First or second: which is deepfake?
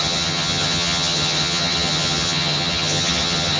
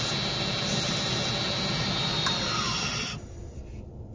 first